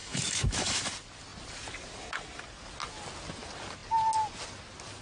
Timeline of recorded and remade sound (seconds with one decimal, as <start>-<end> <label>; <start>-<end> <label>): 0.0-0.8 remade; 0.8-5.0 recorded